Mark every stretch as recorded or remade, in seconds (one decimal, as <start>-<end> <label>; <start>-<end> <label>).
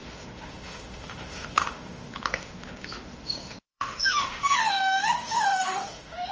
0.0-6.3 remade